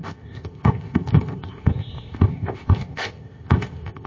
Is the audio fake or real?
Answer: fake